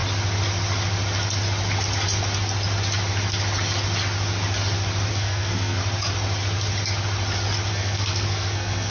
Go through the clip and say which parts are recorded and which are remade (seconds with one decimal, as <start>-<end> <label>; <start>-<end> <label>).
0.0-5.1 recorded; 5.1-5.8 remade; 5.8-7.7 recorded; 7.7-8.9 remade